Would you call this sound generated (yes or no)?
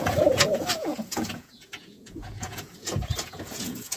yes